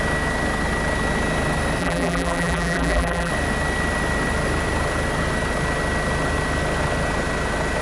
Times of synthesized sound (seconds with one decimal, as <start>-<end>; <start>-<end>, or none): 1.8-3.3